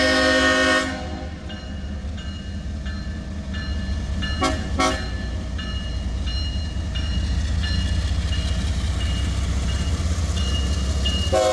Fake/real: real